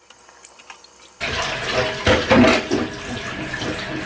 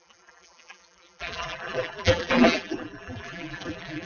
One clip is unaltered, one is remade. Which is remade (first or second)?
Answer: second